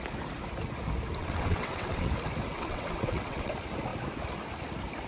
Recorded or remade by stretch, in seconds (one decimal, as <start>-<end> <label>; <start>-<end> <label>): 0.0-1.2 recorded; 1.2-2.1 remade; 2.1-2.5 recorded; 2.5-3.5 remade; 3.5-5.1 recorded